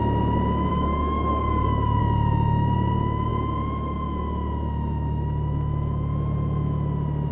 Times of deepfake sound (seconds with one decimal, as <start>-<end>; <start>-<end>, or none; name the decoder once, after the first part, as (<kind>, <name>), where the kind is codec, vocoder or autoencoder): 0.7-2.0 (codec, DAC)